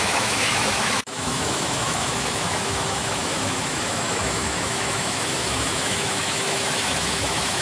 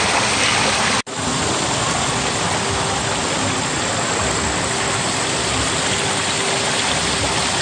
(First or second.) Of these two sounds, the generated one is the first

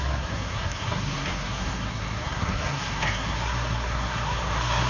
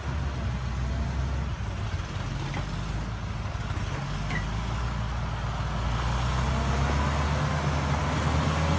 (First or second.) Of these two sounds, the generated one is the first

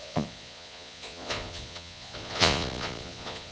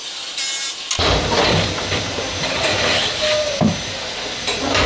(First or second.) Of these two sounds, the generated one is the first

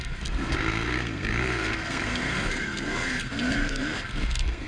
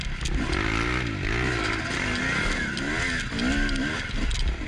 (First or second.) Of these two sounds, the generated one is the first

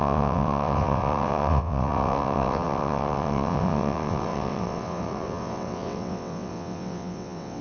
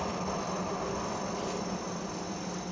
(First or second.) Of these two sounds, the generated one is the first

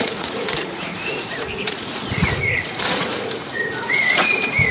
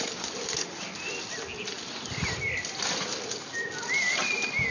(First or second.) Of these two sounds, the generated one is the first